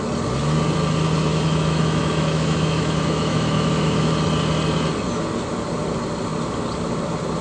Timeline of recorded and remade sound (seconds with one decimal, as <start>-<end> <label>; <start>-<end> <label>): 0.0-1.3 recorded; 1.3-4.1 remade; 4.1-7.4 recorded